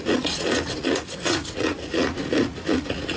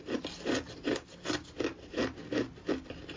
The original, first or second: second